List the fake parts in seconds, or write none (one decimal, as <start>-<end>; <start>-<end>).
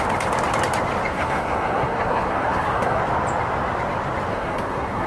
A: 1.1-3.0; 4.3-5.1